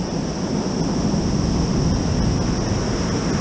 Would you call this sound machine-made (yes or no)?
no